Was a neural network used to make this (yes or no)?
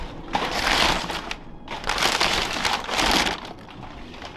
no